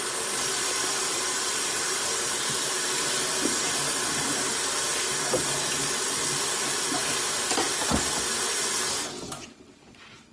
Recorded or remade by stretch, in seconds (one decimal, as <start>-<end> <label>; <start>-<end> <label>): 0.0-0.5 recorded; 0.5-4.5 remade; 4.5-7.0 recorded; 7.0-8.0 remade; 8.0-10.3 recorded